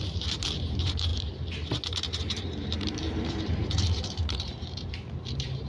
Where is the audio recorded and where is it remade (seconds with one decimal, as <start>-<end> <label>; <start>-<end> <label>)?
0.0-5.7 remade